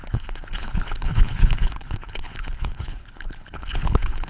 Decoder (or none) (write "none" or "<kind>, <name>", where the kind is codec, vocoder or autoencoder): codec, HILCodec